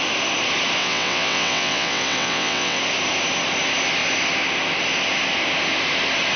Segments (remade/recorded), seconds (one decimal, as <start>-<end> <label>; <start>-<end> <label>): 0.0-0.8 recorded; 0.8-2.8 remade; 2.8-6.4 recorded